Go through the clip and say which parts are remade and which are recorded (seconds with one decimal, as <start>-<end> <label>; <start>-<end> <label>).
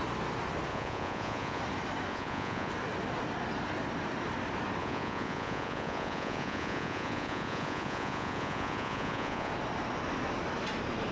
0.0-0.7 recorded; 0.7-1.6 remade; 1.6-2.1 recorded; 2.1-2.7 remade; 2.7-4.8 recorded; 4.8-9.5 remade; 9.5-11.1 recorded